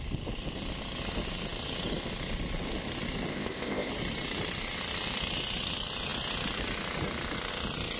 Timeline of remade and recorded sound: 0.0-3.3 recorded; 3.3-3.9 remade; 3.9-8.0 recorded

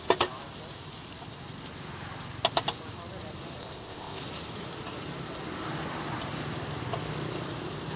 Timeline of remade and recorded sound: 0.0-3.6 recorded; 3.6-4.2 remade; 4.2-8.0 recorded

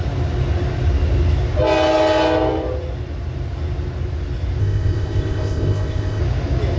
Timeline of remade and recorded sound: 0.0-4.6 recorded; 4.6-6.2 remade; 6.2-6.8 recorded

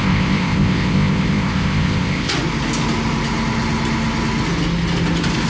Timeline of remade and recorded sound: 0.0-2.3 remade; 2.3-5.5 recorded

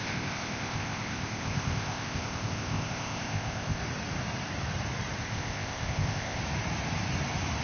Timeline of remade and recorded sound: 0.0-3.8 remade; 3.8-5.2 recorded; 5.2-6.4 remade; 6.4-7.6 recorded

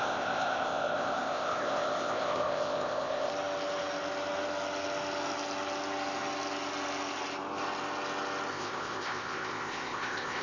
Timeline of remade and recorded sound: 0.0-3.3 remade; 3.3-8.5 recorded; 8.5-10.4 remade

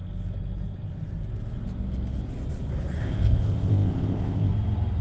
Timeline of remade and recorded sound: 0.0-3.0 recorded; 3.0-4.5 remade; 4.5-5.0 recorded

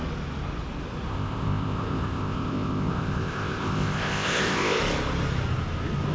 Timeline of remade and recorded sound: 0.0-1.1 recorded; 1.1-4.8 remade; 4.8-6.1 recorded